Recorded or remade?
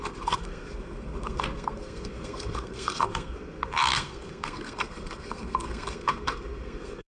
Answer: remade